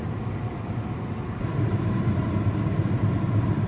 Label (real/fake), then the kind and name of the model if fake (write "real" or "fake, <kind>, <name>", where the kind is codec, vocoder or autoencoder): fake, vocoder, BigVGAN v2